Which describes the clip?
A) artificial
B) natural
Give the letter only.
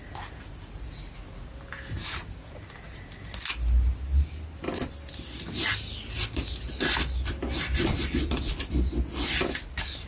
B